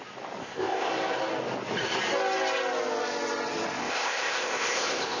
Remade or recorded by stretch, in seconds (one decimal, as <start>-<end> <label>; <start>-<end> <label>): 0.0-0.4 recorded; 0.4-0.9 remade; 0.9-3.8 recorded; 3.8-5.2 remade